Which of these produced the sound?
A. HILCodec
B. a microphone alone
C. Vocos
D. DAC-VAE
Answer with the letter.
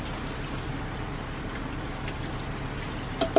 B